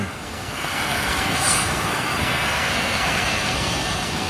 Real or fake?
fake